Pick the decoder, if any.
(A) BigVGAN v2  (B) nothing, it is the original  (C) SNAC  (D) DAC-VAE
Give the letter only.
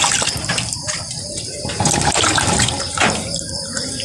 A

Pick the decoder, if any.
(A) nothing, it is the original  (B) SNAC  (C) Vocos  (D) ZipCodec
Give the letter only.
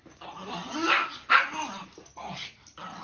A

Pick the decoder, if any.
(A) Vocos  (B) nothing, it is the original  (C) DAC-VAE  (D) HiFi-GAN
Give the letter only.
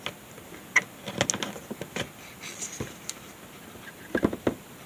B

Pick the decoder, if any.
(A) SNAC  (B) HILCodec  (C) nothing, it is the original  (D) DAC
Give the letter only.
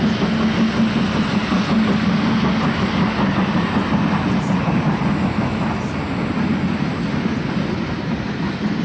C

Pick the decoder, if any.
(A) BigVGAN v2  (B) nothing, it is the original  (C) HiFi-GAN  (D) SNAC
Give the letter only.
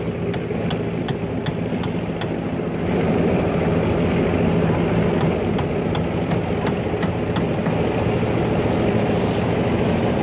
B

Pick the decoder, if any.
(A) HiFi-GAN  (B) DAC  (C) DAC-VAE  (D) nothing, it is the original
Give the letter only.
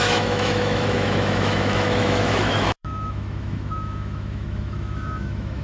C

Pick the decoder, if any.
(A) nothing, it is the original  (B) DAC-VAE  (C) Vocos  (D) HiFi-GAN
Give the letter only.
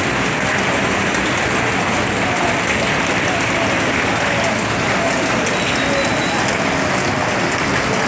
A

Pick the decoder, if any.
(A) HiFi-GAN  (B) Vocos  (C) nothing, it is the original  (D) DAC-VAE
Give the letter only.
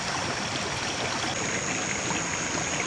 C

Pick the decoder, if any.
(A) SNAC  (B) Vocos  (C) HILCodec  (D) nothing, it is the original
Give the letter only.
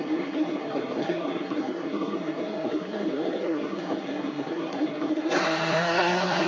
A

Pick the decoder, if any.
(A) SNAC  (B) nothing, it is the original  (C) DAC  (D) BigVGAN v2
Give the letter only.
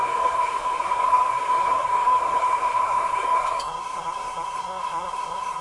A